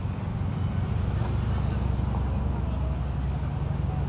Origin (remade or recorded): recorded